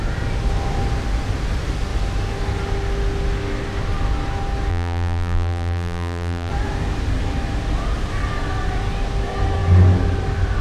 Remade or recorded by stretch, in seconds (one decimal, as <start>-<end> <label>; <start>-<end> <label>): 0.0-4.7 recorded; 4.7-6.5 remade; 6.5-10.6 recorded